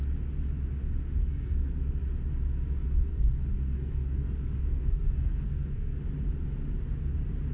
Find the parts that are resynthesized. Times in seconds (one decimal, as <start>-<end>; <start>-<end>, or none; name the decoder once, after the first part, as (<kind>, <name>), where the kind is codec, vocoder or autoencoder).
1.2-2.0 (codec, SNAC); 3.1-6.0